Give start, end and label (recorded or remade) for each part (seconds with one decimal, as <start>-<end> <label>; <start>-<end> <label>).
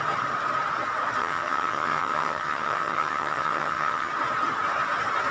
0.0-1.2 recorded; 1.2-4.1 remade; 4.1-5.3 recorded